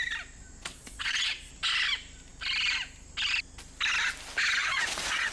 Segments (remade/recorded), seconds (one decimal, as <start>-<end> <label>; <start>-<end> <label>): 0.0-0.7 recorded; 0.7-1.5 remade; 1.5-4.6 recorded; 4.6-5.3 remade